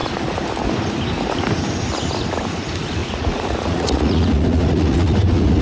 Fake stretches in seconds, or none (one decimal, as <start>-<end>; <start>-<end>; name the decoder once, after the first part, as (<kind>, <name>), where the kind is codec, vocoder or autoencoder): 3.0-5.6 (vocoder, Vocos)